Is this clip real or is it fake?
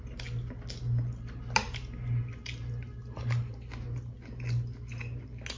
real